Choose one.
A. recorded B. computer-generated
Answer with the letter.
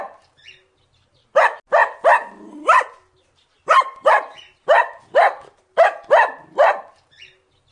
A